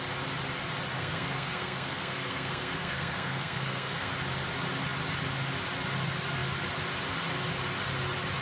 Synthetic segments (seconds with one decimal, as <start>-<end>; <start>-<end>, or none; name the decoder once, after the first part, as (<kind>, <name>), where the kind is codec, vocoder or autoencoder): 1.0-4.1 (codec, SNAC)